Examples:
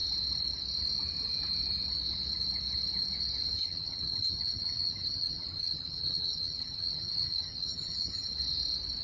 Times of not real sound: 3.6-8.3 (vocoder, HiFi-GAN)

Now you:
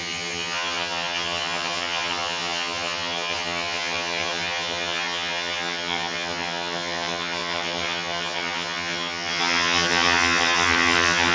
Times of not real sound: 0.0-11.3 (vocoder, HiFi-GAN)

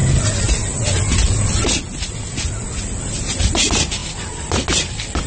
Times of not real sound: none

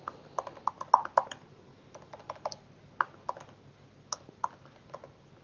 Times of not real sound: none

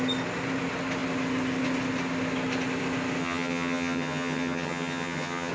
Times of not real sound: 3.2-5.5 (vocoder, HiFi-GAN)

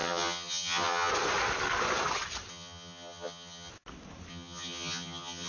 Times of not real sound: 0.0-1.1 (vocoder, HiFi-GAN); 2.5-3.7; 4.3-5.5

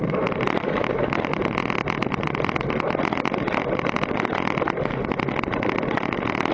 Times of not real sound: none